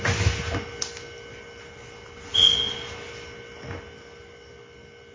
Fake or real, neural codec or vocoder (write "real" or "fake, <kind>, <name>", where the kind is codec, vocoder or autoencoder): real